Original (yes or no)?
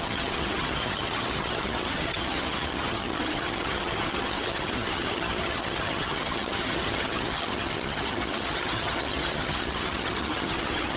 no